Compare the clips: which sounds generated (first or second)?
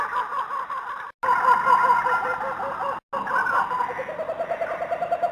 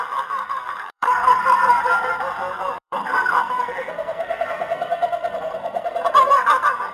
second